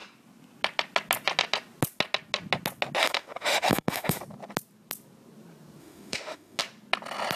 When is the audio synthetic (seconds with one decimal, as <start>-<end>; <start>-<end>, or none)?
3.0-4.2; 5.8-6.6